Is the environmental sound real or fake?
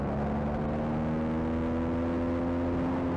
real